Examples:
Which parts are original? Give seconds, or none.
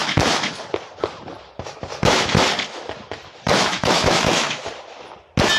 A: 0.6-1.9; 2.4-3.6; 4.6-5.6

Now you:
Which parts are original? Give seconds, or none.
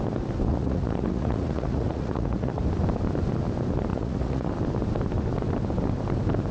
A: 0.0-0.5; 2.6-3.9; 4.5-6.5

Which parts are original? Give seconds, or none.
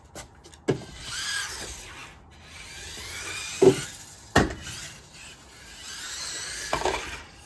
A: 0.0-4.6; 6.2-7.5